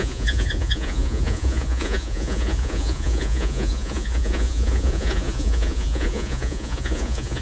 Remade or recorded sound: remade